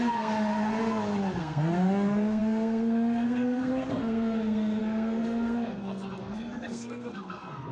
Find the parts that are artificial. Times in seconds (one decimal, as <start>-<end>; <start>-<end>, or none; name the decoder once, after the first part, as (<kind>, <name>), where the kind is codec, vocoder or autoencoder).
0.0-0.5 (codec, SNAC); 1.4-7.7